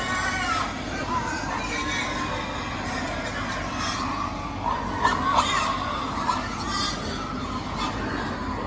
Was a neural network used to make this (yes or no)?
no